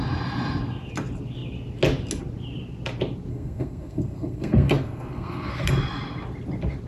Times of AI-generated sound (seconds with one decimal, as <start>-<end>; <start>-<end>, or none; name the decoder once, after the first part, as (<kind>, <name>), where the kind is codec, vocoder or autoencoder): 3.3-5.7 (codec, SNAC)

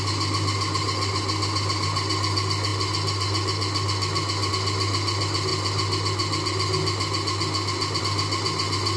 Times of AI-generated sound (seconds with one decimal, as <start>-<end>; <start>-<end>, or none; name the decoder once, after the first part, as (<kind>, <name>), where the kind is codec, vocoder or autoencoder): none

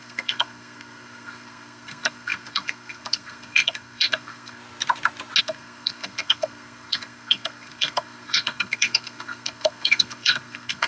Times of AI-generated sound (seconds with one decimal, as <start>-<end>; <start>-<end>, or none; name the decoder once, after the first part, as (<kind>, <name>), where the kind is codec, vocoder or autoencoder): 0.0-4.6 (codec, SNAC); 5.4-10.9

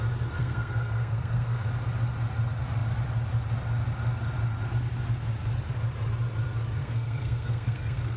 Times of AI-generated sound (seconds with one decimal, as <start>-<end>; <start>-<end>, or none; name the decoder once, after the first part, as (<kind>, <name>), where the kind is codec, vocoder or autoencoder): 0.4-1.7 (codec, SNAC); 6.8-8.2

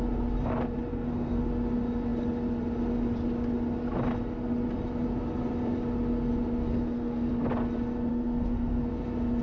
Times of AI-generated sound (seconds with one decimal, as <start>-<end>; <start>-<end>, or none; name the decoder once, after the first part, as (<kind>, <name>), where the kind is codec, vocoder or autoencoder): 0.9-1.4 (codec, SNAC); 6.7-7.3; 8.1-8.9